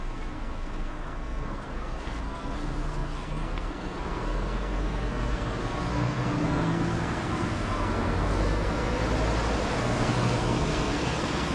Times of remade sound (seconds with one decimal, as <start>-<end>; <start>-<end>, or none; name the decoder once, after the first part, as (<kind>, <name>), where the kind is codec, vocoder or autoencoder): 0.0-9.0 (codec, SNAC); 9.8-11.5

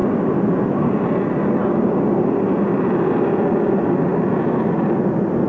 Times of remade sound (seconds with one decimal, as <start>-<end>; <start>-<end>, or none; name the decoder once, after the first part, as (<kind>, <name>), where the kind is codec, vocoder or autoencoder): none

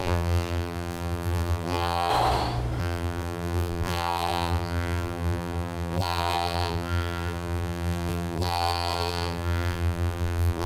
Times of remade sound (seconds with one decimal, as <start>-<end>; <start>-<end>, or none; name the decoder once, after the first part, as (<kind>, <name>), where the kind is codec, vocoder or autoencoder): 0.0-2.1 (vocoder, BigVGAN v2); 2.8-10.7

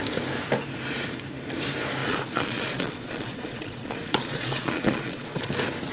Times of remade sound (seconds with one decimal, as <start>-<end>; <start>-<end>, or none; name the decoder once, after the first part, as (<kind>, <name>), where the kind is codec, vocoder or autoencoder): 2.0-5.5 (vocoder, Vocos)

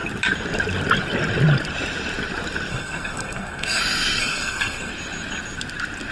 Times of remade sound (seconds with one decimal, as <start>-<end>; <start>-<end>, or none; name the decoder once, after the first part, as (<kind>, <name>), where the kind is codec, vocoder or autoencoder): 2.7-3.8 (codec, SNAC); 4.2-4.9

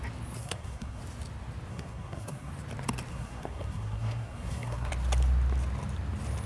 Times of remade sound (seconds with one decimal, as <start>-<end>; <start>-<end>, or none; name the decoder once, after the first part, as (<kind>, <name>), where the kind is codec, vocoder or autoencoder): 0.4-1.0 (codec, SNAC); 1.7-2.5; 3.1-4.9

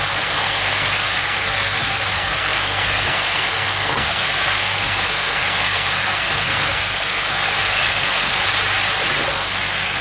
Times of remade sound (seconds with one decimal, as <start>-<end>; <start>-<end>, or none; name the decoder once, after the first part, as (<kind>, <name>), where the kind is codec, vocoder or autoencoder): 0.0-8.4 (codec, SNAC); 9.3-10.0